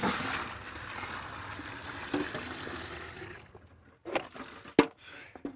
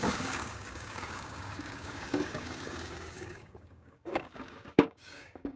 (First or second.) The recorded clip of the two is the first